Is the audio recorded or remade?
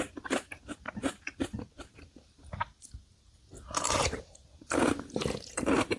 recorded